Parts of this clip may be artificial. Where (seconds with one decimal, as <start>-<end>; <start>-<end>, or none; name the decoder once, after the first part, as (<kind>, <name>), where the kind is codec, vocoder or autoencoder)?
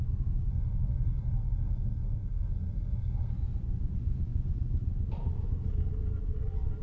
0.5-3.3 (codec, SNAC)